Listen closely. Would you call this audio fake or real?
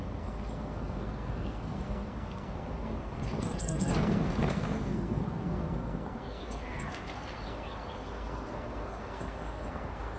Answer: fake